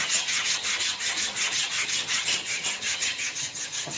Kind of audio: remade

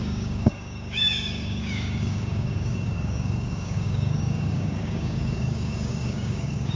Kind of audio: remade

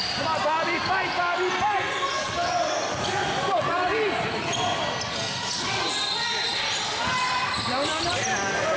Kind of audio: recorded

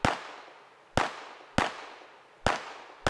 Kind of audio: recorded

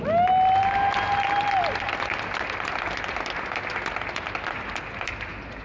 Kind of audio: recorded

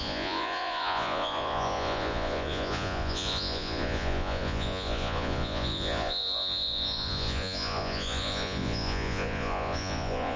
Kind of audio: remade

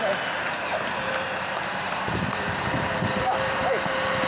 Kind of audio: remade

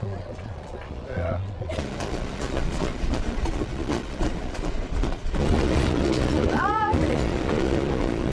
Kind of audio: remade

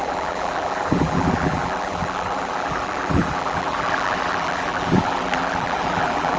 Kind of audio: remade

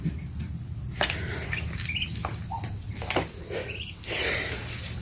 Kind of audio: remade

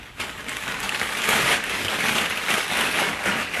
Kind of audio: remade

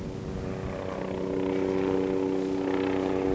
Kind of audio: recorded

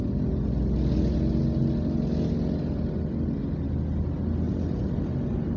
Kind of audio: recorded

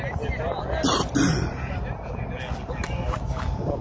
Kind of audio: recorded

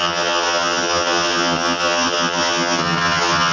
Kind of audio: remade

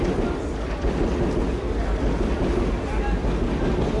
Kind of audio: recorded